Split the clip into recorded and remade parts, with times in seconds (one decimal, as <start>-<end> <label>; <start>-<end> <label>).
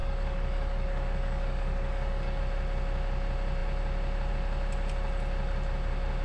0.0-2.4 remade; 2.4-6.2 recorded